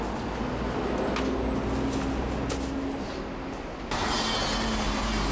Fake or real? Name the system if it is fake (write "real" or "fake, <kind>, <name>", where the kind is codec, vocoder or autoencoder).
real